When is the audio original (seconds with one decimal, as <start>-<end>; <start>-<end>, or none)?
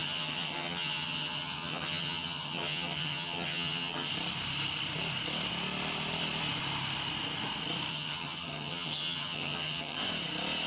4.1-7.9; 10.0-10.7